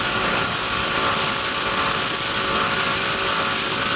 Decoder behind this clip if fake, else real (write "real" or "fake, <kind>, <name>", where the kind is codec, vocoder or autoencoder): real